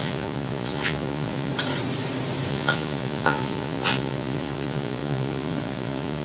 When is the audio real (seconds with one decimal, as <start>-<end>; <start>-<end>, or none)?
1.5-2.5

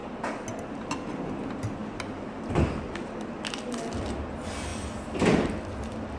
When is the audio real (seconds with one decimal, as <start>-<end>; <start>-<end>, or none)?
0.0-6.2